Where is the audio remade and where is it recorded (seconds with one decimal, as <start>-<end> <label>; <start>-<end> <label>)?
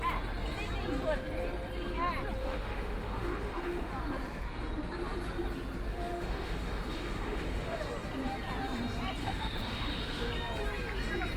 0.0-2.4 recorded; 2.4-3.9 remade; 3.9-5.9 recorded; 5.9-7.8 remade; 7.8-9.2 recorded; 9.2-10.3 remade; 10.3-11.4 recorded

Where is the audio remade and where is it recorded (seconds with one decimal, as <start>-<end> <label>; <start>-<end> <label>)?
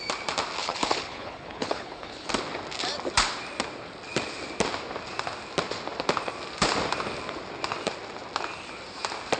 0.0-0.6 recorded; 0.6-2.3 remade; 2.3-9.4 recorded